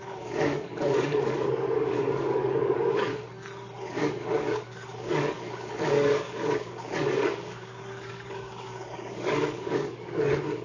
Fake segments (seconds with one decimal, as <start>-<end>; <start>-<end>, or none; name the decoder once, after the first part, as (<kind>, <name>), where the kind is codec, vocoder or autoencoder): 0.0-3.1 (codec, DAC); 3.8-10.6